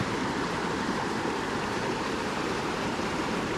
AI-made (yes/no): yes